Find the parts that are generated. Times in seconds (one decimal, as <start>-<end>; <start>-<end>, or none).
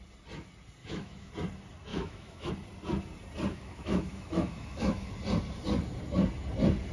0.8-1.3; 1.9-2.5; 3.5-5.1